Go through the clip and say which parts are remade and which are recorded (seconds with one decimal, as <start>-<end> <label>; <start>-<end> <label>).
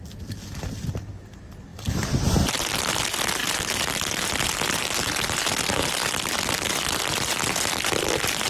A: 0.0-8.5 recorded